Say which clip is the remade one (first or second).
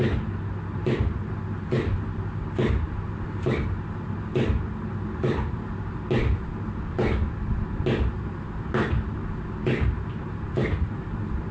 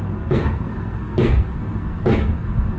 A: second